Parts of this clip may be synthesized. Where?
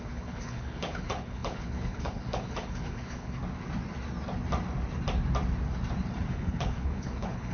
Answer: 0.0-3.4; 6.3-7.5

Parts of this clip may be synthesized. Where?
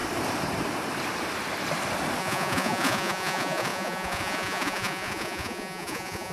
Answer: 2.2-6.3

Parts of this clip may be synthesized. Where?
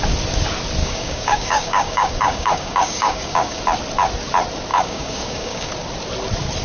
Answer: 0.8-3.6; 4.7-5.7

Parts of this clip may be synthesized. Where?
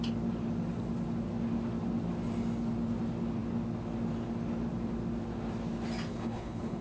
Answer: 6.1-6.8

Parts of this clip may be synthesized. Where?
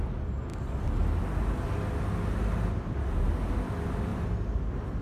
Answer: none